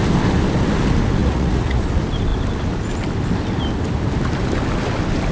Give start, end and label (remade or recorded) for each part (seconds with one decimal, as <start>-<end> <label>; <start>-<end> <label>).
0.0-1.2 recorded; 1.2-1.8 remade; 1.8-5.3 recorded

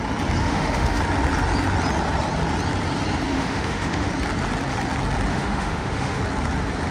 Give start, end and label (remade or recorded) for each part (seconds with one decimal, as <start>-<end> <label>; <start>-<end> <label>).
0.0-0.4 recorded; 0.4-1.0 remade; 1.0-3.3 recorded; 3.3-4.1 remade; 4.1-5.3 recorded; 5.3-6.2 remade; 6.2-6.9 recorded

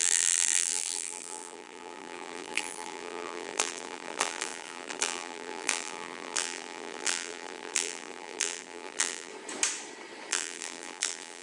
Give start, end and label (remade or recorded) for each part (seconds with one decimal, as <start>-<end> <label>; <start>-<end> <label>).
0.0-9.3 remade; 9.3-10.3 recorded; 10.3-11.4 remade

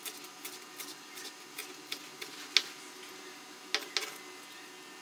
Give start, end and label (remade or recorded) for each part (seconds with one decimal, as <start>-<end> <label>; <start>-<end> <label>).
0.0-5.0 recorded